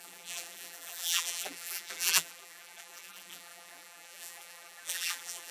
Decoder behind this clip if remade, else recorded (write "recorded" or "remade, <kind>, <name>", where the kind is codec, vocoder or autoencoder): remade, vocoder, BigVGAN v2